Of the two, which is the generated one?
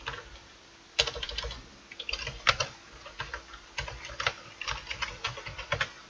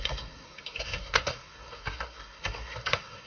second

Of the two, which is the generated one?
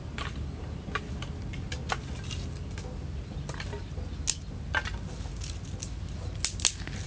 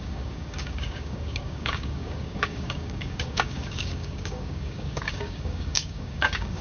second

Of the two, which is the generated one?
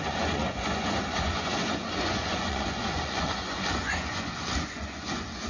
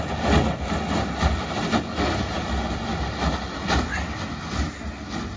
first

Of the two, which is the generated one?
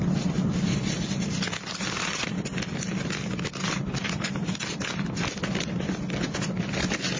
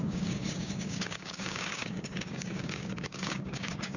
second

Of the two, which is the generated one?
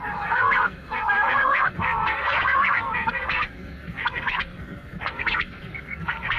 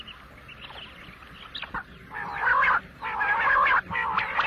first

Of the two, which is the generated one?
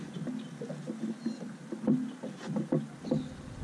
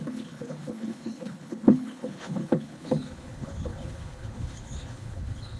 second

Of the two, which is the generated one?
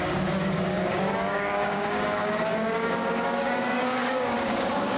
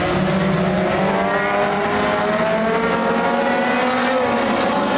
first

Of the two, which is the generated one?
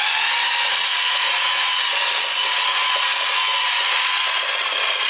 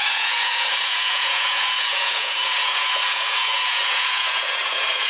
second